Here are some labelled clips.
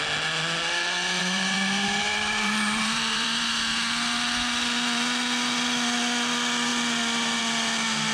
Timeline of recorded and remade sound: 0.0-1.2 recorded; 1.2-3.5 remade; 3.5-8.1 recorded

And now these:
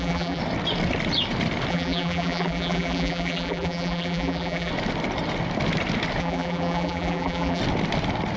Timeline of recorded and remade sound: 0.0-0.4 remade; 0.4-1.7 recorded; 1.7-4.7 remade; 4.7-6.2 recorded; 6.2-7.6 remade; 7.6-8.4 recorded

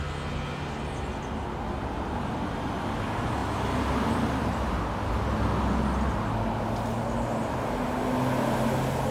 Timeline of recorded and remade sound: 0.0-3.4 recorded; 3.4-4.7 remade; 4.7-9.1 recorded

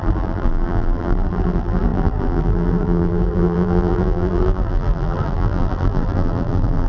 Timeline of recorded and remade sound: 0.0-6.9 remade

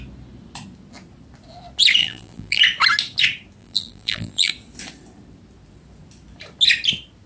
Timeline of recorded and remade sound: 0.0-2.0 recorded; 2.0-2.6 remade; 2.6-3.6 recorded; 3.6-4.5 remade; 4.5-7.3 recorded